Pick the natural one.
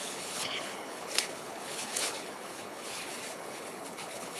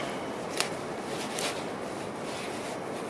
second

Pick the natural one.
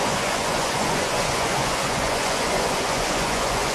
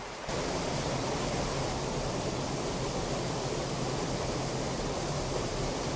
second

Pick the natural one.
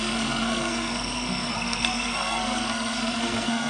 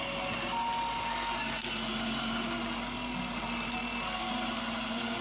second